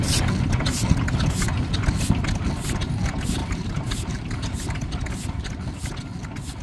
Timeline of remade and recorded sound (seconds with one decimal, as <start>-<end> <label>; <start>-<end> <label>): 0.0-3.4 recorded; 3.4-4.9 remade; 4.9-6.6 recorded